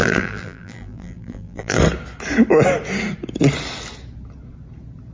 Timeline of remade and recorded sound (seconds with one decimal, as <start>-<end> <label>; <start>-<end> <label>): 0.0-1.8 remade; 1.8-5.1 recorded